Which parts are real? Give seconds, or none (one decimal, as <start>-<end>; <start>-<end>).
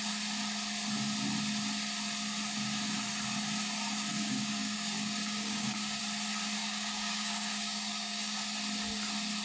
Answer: 0.0-4.1; 6.0-6.6; 8.4-9.4